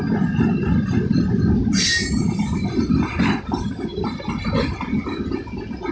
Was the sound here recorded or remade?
recorded